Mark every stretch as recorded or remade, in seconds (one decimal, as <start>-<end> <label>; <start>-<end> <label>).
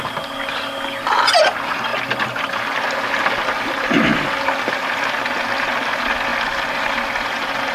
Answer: 0.0-7.7 recorded